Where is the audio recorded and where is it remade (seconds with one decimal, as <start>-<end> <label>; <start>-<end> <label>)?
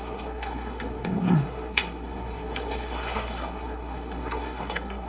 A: 0.0-5.1 remade